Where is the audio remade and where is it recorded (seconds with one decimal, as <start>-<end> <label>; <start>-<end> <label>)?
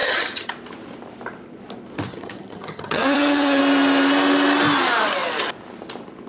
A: 0.0-0.5 remade; 0.5-2.1 recorded; 2.1-3.6 remade; 3.6-6.3 recorded